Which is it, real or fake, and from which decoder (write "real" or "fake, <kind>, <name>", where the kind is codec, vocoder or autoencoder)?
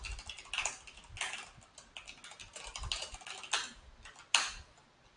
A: real